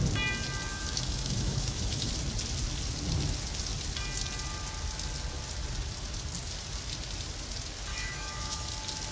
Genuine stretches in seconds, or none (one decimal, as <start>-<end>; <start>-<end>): 0.0-0.7; 2.1-7.9; 8.7-9.1